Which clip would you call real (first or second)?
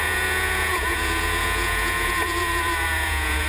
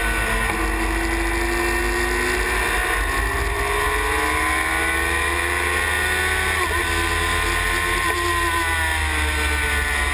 second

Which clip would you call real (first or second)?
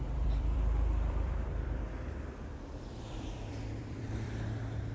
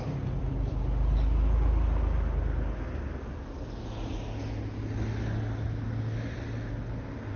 second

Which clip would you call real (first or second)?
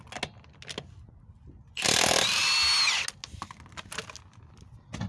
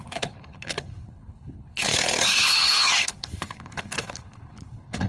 first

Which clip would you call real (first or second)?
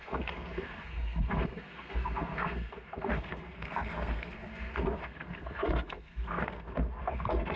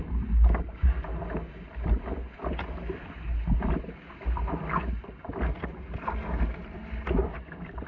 second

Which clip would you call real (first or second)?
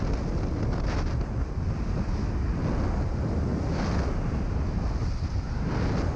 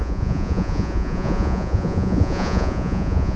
first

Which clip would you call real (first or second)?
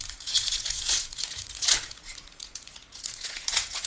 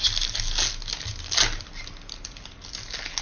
second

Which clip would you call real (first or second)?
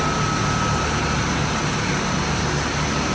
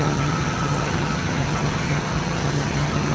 first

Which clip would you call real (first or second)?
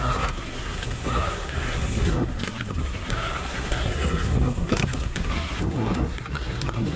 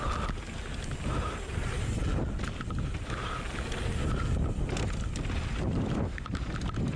second